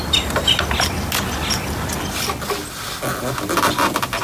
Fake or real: real